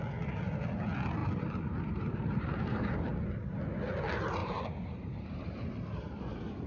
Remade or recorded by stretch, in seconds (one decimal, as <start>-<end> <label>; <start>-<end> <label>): 0.0-1.2 recorded; 1.2-3.1 remade; 3.1-4.4 recorded; 4.4-6.2 remade; 6.2-6.7 recorded

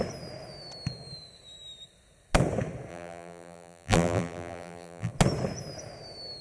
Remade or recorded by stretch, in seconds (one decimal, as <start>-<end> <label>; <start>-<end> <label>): 0.0-2.9 recorded; 2.9-5.1 remade; 5.1-6.4 recorded